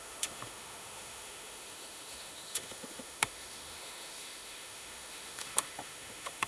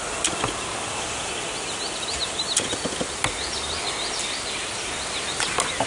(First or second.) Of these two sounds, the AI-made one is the first